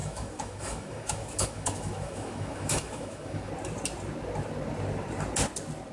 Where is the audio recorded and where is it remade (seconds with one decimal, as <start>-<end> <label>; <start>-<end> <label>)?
0.0-3.5 remade; 3.5-5.9 recorded